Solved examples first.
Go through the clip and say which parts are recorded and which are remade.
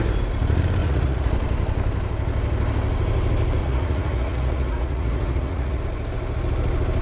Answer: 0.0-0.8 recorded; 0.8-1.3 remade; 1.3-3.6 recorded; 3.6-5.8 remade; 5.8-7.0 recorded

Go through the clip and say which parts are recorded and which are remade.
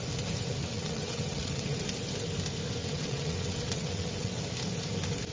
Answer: 0.0-0.6 recorded; 0.6-1.8 remade; 1.8-2.8 recorded; 2.8-4.4 remade; 4.4-5.3 recorded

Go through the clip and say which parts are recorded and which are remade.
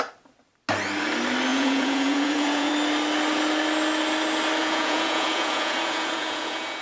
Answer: 0.0-1.5 recorded; 1.5-2.7 remade; 2.7-4.6 recorded; 4.6-6.8 remade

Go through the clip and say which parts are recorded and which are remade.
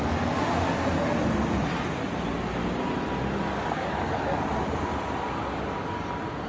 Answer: 0.0-3.6 recorded; 3.6-4.5 remade; 4.5-6.5 recorded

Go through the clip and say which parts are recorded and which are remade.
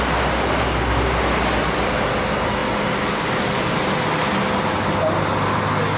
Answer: 0.0-6.0 recorded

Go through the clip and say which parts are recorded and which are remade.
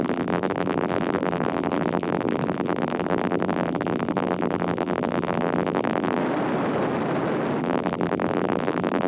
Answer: 0.0-6.2 remade; 6.2-7.6 recorded; 7.6-9.1 remade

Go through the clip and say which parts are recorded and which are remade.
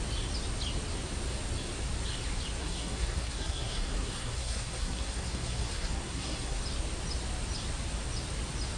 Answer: 0.0-2.6 recorded; 2.6-6.6 remade; 6.6-8.8 recorded